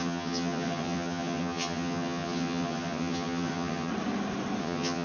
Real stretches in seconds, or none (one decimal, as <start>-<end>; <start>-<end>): 3.9-4.6